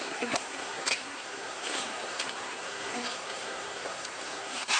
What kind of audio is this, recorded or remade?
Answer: remade